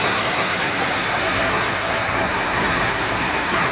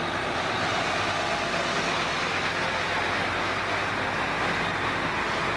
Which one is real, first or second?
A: second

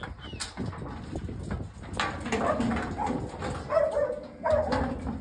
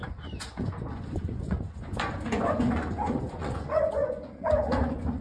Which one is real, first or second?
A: first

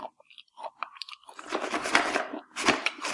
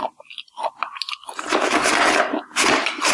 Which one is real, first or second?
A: second